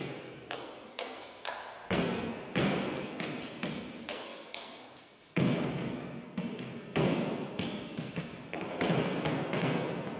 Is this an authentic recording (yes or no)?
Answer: no